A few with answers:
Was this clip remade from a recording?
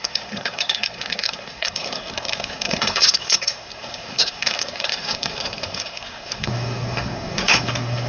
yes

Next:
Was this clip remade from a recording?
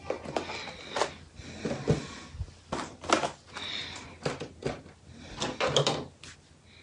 no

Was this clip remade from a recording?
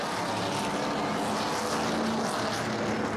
no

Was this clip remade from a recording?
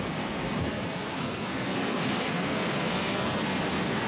yes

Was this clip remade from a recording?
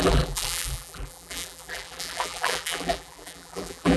yes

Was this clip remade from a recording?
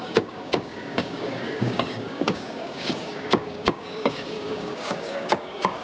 yes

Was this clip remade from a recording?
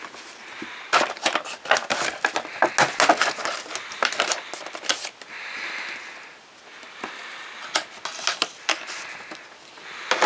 no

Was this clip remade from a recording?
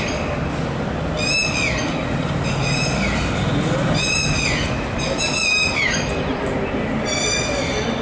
no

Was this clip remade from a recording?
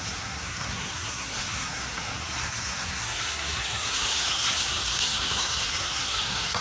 yes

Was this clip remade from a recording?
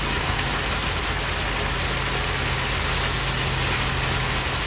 no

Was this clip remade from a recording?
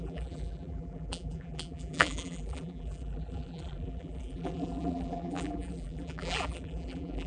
yes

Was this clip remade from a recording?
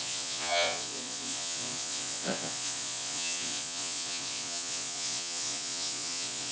yes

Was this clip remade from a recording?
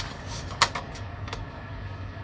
yes